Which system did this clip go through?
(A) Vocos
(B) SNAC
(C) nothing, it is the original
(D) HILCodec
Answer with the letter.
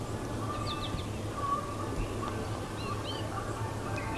C